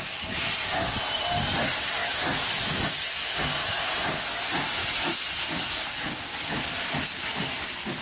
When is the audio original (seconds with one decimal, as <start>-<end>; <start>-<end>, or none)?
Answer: 0.0-2.0; 2.7-3.6; 4.2-4.8; 5.3-8.0